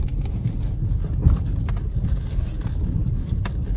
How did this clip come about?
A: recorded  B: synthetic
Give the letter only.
A